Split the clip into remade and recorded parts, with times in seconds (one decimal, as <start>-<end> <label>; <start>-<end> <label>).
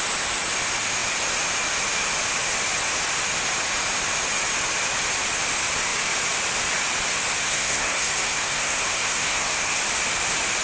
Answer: 0.0-7.4 recorded; 7.4-9.8 remade; 9.8-10.6 recorded